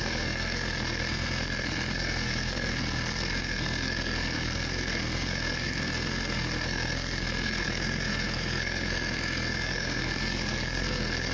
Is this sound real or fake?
fake